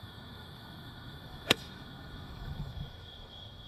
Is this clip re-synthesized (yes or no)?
yes